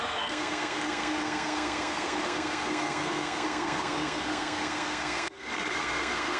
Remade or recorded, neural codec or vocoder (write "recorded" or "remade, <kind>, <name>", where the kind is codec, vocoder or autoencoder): remade, codec, SNAC